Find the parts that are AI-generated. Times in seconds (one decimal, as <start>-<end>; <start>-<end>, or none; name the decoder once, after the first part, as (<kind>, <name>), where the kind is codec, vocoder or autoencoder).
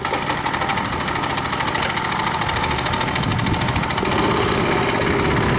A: none